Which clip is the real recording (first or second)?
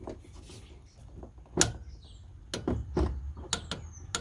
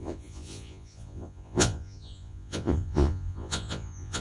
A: first